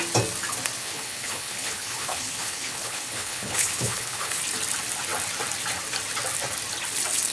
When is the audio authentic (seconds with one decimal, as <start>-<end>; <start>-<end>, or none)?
0.0-0.8; 4.4-7.3